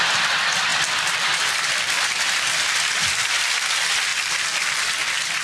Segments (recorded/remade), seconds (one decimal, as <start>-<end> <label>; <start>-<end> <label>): 0.0-0.7 recorded; 0.7-3.5 remade; 3.5-4.1 recorded; 4.1-5.4 remade